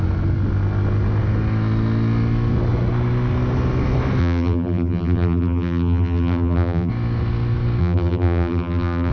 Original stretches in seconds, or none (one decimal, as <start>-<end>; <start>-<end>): 0.0-4.2; 6.9-7.8